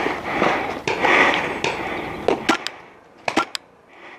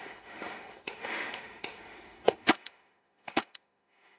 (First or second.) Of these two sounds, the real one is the first